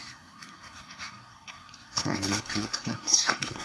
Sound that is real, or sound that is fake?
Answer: fake